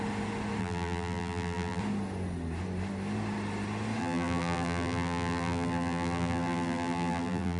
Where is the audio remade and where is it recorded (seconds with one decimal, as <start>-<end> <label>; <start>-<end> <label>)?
0.0-0.6 recorded; 0.6-1.8 remade; 1.8-4.0 recorded; 4.0-7.6 remade